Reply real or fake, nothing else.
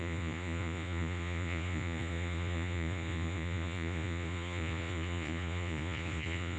fake